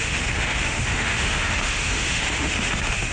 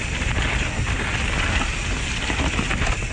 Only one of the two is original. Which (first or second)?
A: second